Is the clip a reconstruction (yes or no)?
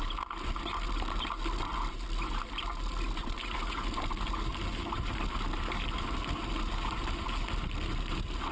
no